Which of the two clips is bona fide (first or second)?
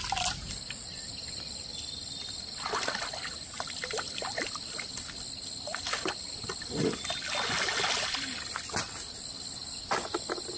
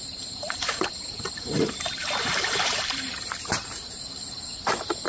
first